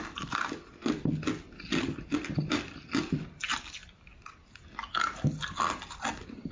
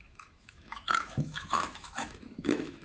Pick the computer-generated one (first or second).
second